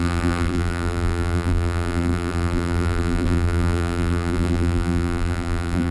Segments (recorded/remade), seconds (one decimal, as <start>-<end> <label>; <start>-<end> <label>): 0.0-5.9 remade